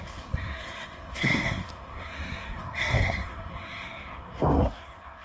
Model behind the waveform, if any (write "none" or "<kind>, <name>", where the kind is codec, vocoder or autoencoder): codec, SNAC